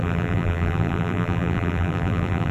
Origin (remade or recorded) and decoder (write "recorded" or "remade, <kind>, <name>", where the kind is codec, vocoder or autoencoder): remade, vocoder, BigVGAN v2